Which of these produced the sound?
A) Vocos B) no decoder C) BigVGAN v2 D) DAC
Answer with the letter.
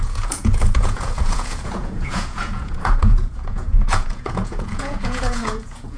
A